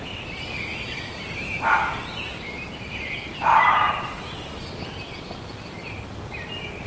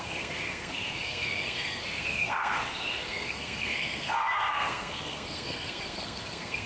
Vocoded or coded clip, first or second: second